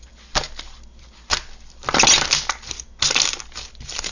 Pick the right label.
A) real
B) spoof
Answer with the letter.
A